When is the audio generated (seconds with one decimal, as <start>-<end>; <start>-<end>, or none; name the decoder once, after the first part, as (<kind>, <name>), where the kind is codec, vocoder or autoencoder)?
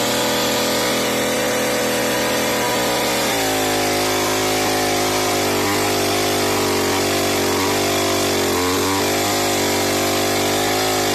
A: none